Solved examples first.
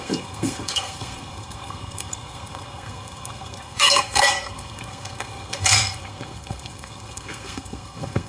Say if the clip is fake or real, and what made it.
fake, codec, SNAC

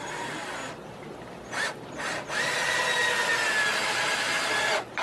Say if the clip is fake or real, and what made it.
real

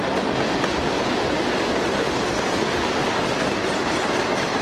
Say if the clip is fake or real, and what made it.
real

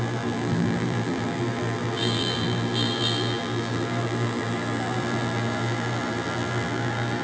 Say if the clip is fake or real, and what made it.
fake, vocoder, BigVGAN v2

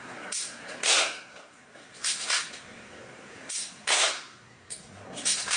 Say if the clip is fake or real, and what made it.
fake, codec, SNAC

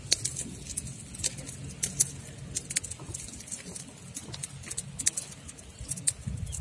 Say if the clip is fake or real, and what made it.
real